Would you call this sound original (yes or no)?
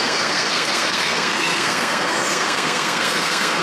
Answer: no